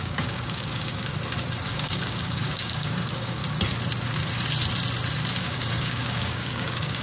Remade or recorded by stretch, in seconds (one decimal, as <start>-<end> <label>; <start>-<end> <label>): 0.0-1.1 remade; 1.1-1.7 recorded; 1.7-3.4 remade; 3.4-5.4 recorded; 5.4-7.0 remade